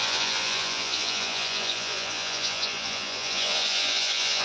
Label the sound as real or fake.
fake